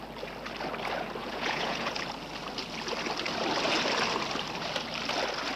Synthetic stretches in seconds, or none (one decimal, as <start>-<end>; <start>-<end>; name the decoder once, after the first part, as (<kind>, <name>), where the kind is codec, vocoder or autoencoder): 1.2-2.0 (vocoder, Vocos)